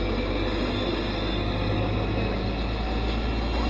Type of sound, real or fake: real